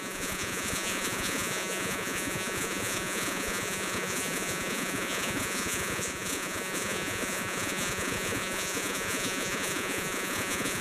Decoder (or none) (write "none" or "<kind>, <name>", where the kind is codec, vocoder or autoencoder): vocoder, Vocos